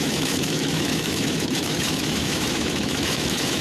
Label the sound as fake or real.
fake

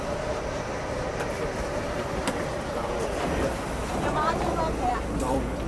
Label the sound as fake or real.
fake